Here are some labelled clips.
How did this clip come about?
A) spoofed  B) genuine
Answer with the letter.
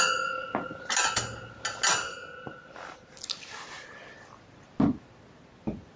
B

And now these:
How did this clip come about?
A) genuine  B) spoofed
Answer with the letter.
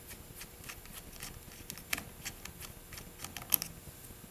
A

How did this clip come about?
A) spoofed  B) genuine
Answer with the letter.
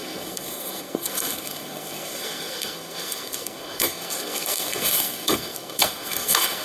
A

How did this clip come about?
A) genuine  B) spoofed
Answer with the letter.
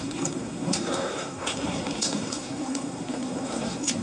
B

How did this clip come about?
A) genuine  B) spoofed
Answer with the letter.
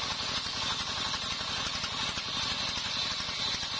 A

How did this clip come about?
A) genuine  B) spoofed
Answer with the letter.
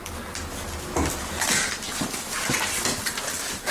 A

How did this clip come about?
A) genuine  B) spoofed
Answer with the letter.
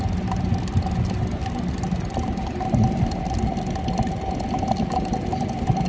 A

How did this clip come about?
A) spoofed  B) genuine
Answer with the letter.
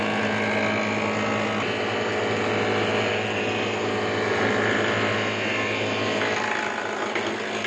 B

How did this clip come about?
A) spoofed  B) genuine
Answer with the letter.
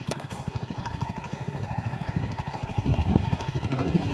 A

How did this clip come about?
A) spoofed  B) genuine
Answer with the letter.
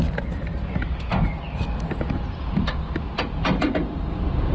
B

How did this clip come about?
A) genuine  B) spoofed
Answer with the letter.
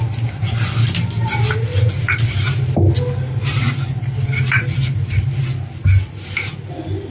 A